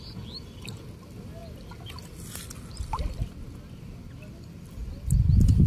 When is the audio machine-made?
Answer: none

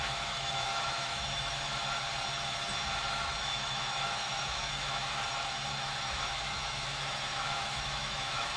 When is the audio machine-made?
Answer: 0.0-1.7; 3.1-8.6

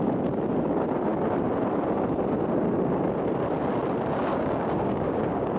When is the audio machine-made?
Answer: 4.3-5.6